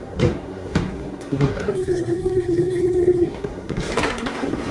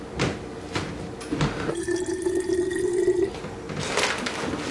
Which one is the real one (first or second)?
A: second